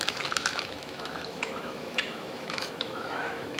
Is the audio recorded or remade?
remade